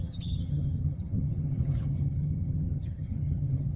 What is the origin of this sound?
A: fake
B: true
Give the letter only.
A